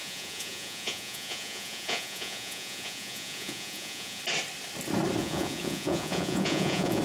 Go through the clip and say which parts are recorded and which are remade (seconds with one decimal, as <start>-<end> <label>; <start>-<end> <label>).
0.0-4.2 remade; 4.2-5.2 recorded; 5.2-7.0 remade